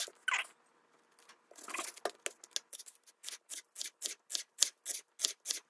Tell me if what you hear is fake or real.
real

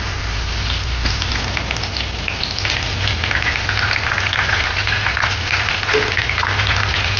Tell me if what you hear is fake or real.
real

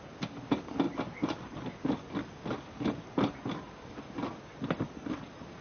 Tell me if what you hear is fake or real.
real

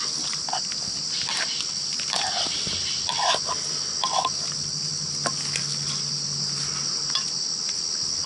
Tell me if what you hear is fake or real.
real